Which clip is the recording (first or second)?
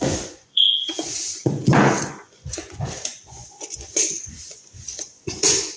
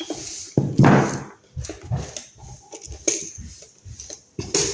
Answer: second